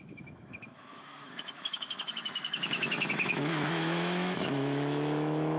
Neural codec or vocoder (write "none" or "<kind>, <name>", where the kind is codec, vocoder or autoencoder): autoencoder, DAC-VAE